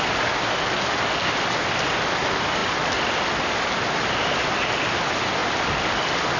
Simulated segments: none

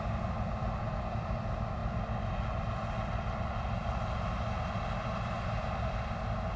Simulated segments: none

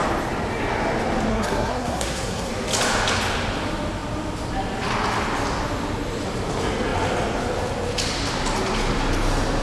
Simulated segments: 1.3-2.5 (codec, SNAC)

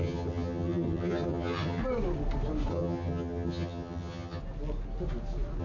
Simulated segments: 0.0-1.8 (vocoder, HiFi-GAN); 2.7-4.4